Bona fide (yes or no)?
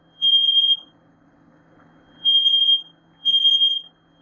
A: no